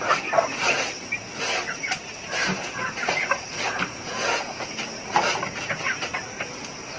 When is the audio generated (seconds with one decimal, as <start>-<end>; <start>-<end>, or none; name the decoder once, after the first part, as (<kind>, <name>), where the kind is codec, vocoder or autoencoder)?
3.9-4.7 (vocoder, Vocos)